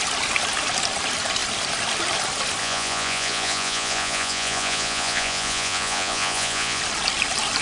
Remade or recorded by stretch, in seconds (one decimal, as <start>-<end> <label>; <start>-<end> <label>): 0.0-2.6 recorded; 2.6-6.8 remade; 6.8-7.6 recorded